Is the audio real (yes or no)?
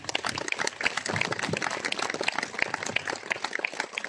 yes